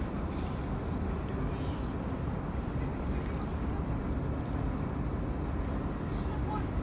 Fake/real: real